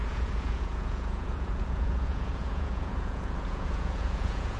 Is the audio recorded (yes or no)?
no